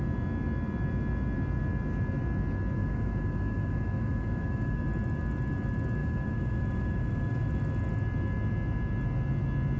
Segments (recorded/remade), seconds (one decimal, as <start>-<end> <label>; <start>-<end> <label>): 0.0-2.8 recorded; 2.8-4.8 remade; 4.8-6.0 recorded; 6.0-7.5 remade; 7.5-9.8 recorded